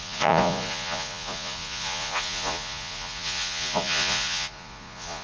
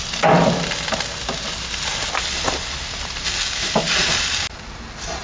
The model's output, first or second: first